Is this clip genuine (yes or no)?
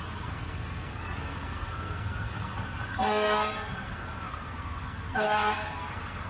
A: no